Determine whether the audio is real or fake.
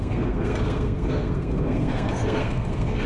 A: fake